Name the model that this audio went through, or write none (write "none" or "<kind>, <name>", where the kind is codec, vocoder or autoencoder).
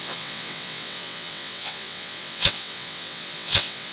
vocoder, WaveNeXt